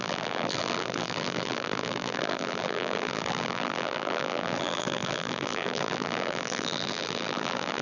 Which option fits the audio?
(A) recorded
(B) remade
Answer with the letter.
B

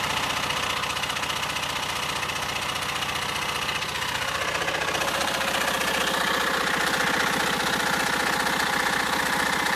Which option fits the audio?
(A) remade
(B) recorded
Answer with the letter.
B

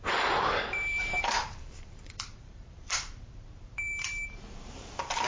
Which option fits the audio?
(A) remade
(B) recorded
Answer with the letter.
A